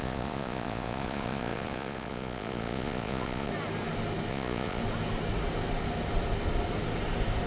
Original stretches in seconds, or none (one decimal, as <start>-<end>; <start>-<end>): 3.5-4.3; 4.8-7.5